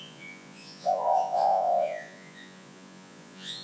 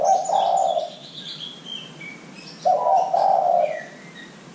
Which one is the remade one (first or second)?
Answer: first